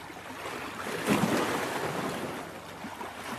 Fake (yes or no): no